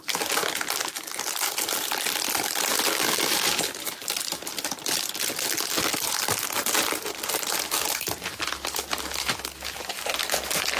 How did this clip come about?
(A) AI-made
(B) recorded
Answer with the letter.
B